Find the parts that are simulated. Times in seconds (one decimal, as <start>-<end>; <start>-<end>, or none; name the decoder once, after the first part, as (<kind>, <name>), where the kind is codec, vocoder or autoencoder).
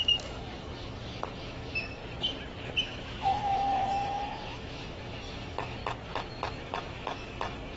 0.0-2.0 (autoencoder, DAC-VAE); 2.8-5.8; 6.3-7.8